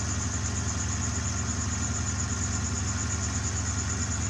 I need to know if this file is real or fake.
real